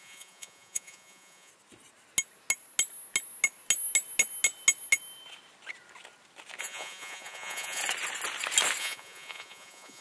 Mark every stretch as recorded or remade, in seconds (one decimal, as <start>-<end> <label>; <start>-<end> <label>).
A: 0.0-1.5 remade; 1.5-6.6 recorded; 6.6-7.8 remade; 7.8-8.8 recorded; 8.8-10.0 remade